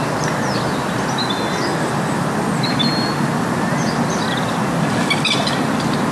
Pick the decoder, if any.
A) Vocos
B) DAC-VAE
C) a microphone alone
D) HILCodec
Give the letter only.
C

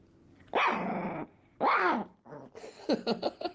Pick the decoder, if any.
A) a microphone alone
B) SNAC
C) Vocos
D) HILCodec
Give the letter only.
A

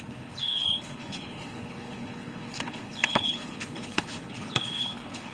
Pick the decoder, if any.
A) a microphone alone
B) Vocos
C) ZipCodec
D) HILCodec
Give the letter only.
D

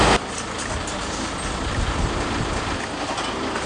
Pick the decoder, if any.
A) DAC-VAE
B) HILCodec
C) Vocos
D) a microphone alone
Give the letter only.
D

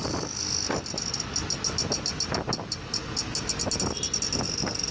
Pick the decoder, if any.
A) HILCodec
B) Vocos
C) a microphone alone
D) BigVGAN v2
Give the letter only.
C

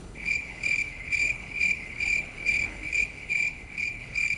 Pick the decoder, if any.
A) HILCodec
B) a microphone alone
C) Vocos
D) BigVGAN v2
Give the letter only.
A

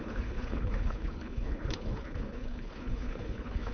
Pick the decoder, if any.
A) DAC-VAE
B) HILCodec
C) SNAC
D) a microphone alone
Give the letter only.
B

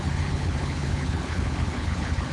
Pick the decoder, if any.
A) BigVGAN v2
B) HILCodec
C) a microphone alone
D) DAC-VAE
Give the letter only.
B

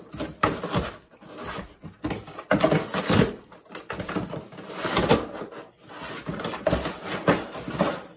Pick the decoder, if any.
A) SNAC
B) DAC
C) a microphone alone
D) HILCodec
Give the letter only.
C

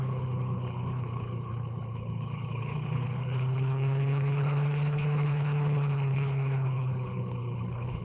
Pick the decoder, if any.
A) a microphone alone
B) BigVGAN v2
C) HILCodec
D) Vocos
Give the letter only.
C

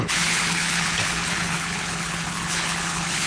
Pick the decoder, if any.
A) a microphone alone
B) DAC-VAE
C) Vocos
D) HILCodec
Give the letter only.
D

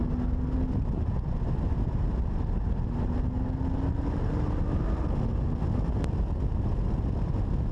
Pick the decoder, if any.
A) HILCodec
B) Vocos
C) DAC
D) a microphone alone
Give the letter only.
D